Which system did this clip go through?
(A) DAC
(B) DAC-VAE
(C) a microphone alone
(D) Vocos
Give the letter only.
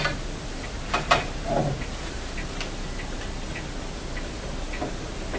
C